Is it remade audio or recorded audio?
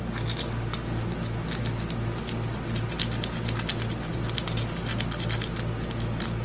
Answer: recorded